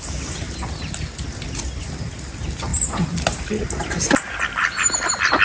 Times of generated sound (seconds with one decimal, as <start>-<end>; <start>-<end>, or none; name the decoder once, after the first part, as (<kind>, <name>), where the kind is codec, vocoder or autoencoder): none